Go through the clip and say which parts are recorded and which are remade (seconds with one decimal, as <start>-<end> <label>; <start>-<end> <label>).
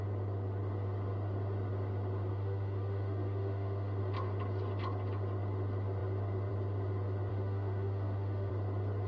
0.0-2.3 recorded; 2.3-4.0 remade; 4.0-7.3 recorded; 7.3-8.5 remade; 8.5-9.1 recorded